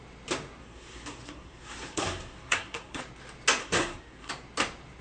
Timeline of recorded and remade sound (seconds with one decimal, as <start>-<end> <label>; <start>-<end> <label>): 0.0-0.6 recorded; 0.6-3.0 remade; 3.0-3.6 recorded; 3.6-4.3 remade; 4.3-5.0 recorded